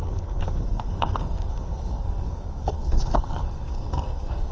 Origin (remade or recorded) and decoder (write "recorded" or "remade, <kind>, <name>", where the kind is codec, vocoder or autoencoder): remade, codec, SNAC